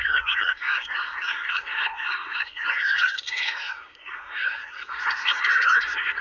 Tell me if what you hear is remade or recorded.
remade